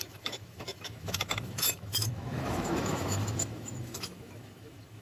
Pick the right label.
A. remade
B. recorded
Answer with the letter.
A